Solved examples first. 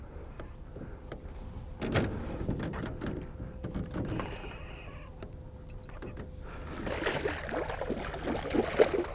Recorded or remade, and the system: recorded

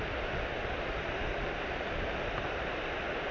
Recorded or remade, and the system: recorded